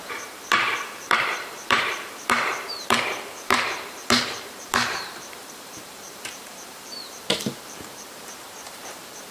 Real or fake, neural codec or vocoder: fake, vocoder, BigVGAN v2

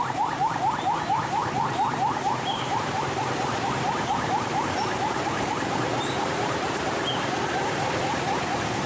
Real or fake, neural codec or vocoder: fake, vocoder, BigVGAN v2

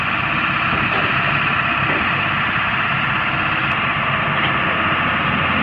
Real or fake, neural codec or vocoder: real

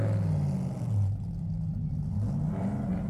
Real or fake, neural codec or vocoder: real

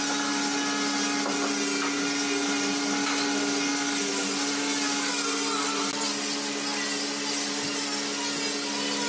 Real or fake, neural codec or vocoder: real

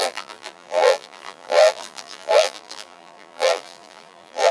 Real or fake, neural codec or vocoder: fake, vocoder, BigVGAN v2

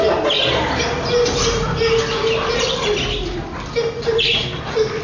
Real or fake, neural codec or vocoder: real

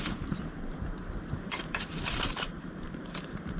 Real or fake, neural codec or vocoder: fake, vocoder, BigVGAN v2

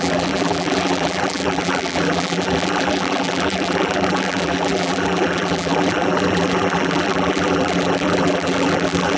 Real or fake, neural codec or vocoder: fake, vocoder, BigVGAN v2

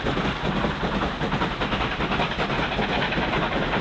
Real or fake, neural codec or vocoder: real